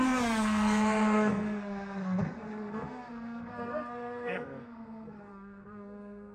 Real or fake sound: fake